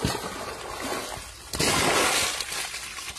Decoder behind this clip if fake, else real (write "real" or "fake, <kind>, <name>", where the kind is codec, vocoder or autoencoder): real